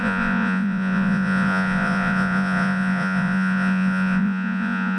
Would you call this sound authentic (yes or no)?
no